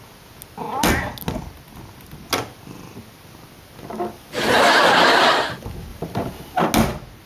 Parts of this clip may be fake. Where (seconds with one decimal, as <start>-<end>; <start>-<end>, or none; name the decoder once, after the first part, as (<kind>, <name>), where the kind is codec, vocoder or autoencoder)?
5.9-6.6 (vocoder, BigVGAN v2)